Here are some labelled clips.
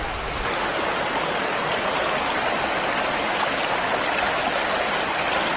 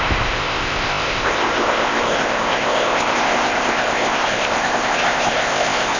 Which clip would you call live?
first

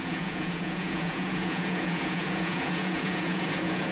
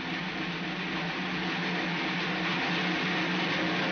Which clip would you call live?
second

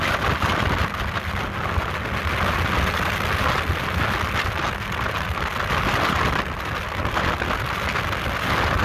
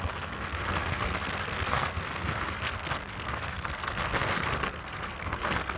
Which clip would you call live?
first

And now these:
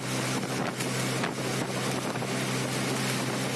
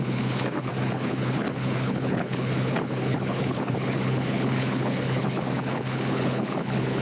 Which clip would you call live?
first